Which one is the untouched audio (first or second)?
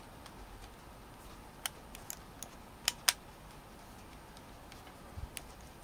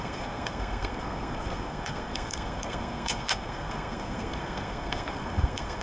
first